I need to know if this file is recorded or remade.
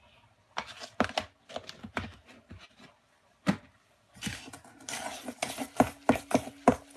recorded